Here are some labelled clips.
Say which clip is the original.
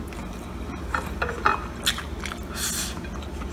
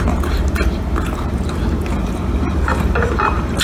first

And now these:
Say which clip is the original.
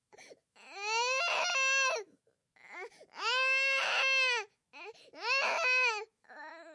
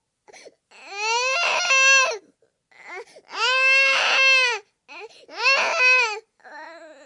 second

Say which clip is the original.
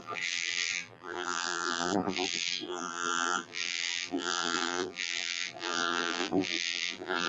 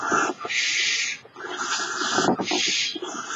second